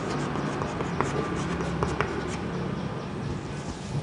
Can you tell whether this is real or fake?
real